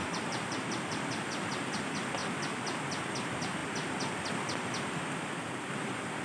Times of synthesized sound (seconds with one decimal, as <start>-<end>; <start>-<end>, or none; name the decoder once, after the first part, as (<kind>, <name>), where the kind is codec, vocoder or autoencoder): 0.0-1.5 (vocoder, BigVGAN v2)